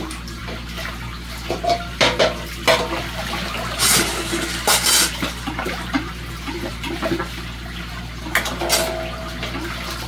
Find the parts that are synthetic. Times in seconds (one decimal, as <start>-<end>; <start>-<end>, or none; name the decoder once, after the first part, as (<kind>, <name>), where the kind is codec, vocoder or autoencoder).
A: none